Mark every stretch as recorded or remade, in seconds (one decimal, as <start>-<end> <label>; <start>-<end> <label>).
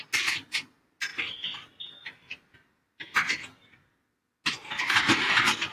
0.0-5.7 recorded